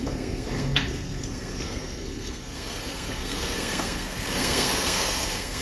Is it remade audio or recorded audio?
remade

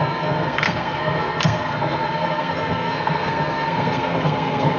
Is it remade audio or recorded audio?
remade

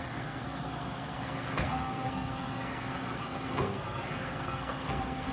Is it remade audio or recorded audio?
remade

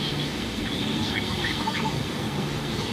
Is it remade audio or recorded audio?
remade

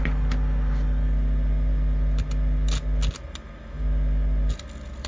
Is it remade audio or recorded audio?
recorded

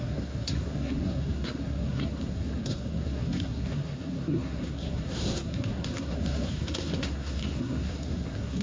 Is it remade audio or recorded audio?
remade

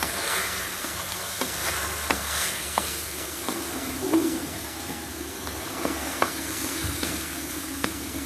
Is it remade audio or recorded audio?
remade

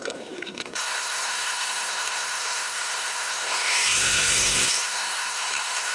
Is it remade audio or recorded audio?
remade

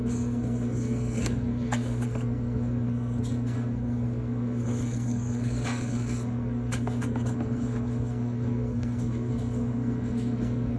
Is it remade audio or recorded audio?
remade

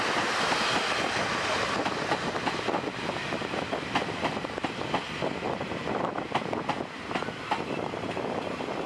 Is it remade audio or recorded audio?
recorded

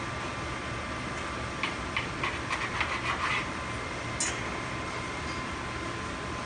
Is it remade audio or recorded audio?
recorded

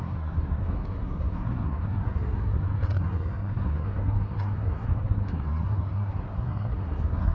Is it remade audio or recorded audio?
remade